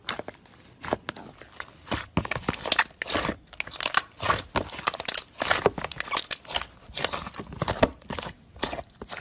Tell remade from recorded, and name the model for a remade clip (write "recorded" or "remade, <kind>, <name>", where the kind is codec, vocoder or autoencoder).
recorded